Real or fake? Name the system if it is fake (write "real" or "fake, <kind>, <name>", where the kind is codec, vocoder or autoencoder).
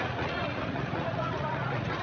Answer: fake, vocoder, Vocos